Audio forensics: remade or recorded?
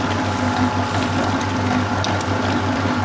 recorded